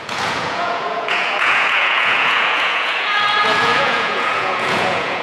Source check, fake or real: fake